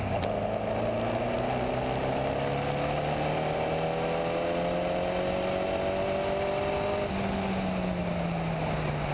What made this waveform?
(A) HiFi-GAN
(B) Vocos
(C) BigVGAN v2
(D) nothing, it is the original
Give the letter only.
D